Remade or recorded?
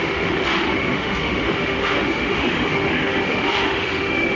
remade